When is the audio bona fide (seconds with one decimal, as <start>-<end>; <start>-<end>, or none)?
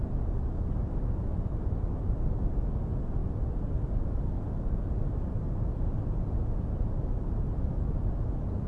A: 0.0-8.7